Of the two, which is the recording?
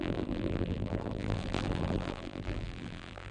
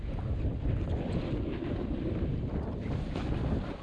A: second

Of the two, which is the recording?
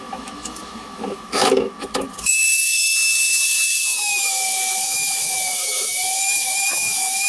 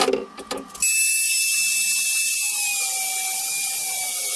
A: second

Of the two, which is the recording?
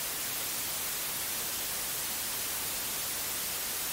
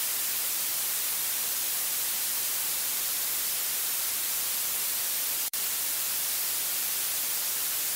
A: first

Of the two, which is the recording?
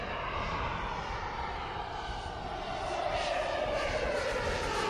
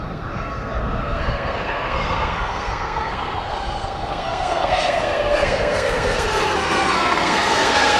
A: first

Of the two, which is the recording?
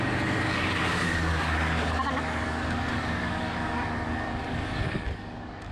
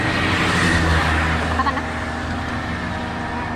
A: second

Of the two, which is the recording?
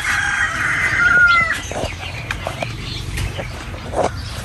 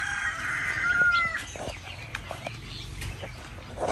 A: second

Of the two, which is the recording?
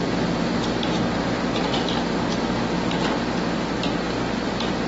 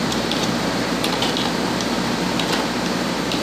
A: first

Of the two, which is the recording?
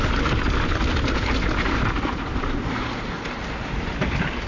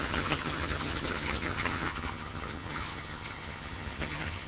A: first